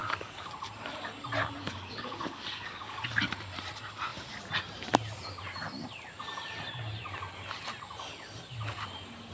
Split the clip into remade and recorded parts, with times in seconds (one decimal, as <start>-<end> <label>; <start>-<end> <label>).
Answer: 0.0-0.5 remade; 0.5-1.6 recorded; 1.6-3.0 remade; 3.0-9.3 recorded